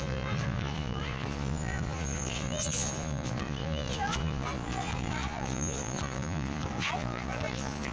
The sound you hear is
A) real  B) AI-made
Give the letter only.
B